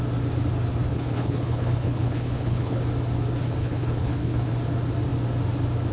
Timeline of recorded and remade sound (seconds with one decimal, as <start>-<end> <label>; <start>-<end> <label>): 0.0-0.8 recorded; 0.8-2.8 remade; 2.8-3.6 recorded; 3.6-4.5 remade; 4.5-5.9 recorded